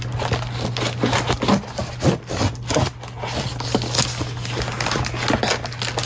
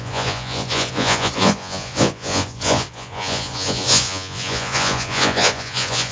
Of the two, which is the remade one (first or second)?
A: second